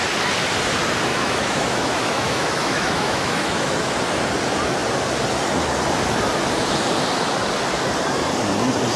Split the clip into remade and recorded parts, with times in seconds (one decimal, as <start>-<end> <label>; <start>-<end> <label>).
0.0-1.1 recorded; 1.1-3.9 remade; 3.9-9.0 recorded